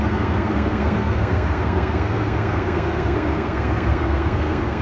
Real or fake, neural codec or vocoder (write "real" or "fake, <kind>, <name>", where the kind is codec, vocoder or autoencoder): fake, codec, SNAC